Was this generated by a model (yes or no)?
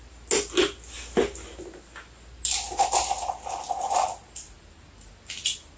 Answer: no